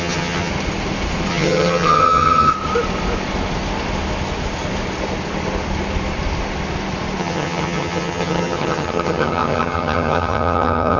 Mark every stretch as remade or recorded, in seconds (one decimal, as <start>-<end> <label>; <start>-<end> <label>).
0.0-0.5 remade; 0.5-1.3 recorded; 1.3-2.5 remade; 2.5-7.2 recorded; 7.2-11.0 remade